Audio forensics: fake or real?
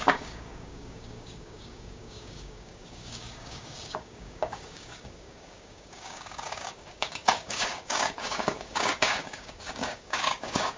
fake